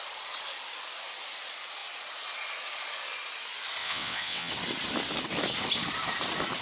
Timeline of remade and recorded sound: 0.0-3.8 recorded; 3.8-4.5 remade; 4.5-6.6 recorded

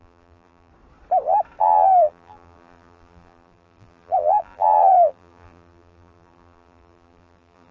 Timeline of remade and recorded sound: 0.0-0.7 remade; 0.7-1.6 recorded; 1.6-7.7 remade